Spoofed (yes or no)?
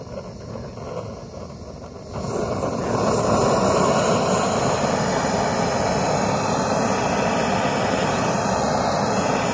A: no